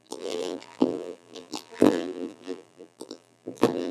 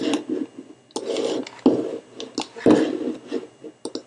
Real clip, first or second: second